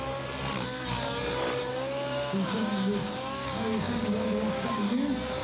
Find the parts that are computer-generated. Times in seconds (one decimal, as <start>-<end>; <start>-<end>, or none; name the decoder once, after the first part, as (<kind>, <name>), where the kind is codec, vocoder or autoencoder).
1.7-4.9 (codec, DAC)